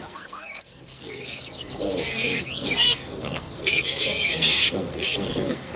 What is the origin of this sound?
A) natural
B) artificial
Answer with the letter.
B